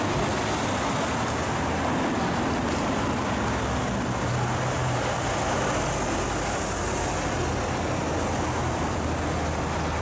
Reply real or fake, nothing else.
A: real